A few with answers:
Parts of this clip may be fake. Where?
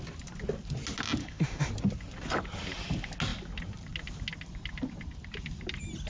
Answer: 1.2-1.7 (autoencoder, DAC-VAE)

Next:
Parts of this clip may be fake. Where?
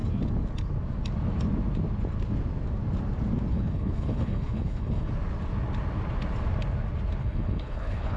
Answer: 3.5-5.1 (codec, HILCodec); 7.2-8.2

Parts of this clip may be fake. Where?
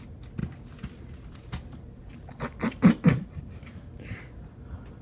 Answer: none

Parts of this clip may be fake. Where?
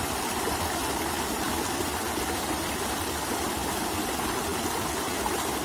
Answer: none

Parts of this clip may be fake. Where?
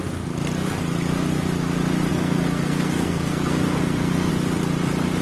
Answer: 2.1-4.3 (codec, SNAC)